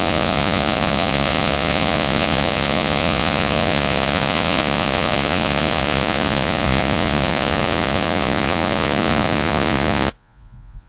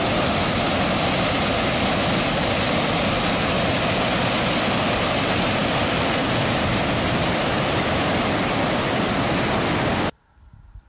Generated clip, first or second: first